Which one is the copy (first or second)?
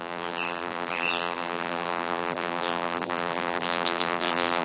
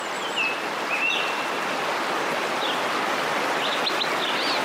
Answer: first